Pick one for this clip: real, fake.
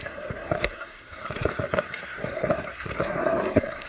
fake